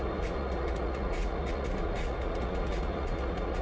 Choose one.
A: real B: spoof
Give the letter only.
B